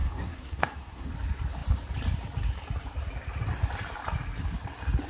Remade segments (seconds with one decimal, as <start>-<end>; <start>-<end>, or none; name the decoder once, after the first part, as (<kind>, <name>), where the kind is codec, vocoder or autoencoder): 0.0-1.1 (codec, SNAC)